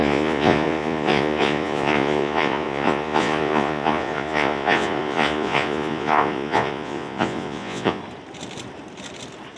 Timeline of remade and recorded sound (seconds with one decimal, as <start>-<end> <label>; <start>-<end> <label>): 0.0-8.0 remade; 8.0-9.6 recorded